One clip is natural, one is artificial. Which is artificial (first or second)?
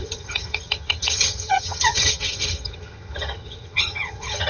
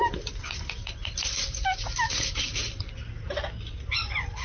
first